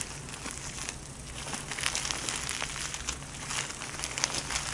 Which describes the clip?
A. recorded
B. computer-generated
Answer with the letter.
A